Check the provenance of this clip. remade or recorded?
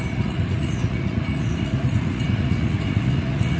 remade